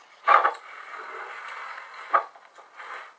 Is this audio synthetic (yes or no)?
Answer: no